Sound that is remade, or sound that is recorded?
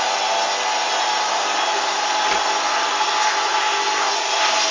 recorded